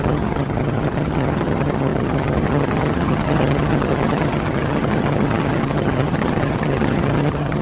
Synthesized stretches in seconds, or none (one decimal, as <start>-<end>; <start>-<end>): 0.0-7.6